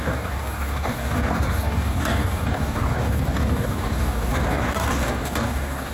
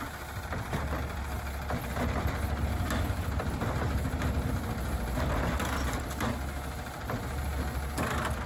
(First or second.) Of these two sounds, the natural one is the second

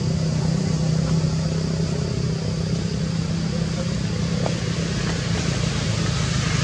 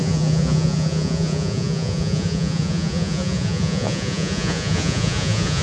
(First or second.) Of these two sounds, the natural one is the first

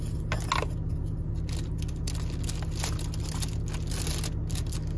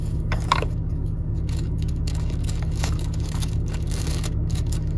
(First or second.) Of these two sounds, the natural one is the first